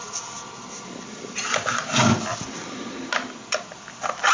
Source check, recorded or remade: recorded